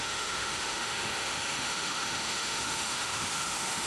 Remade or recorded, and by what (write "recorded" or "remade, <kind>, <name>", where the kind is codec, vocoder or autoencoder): remade, autoencoder, DAC-VAE